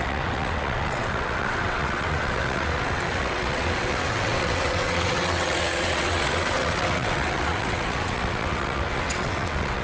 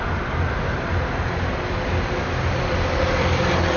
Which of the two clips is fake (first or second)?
first